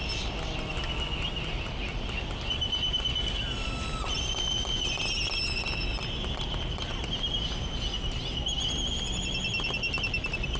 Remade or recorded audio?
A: recorded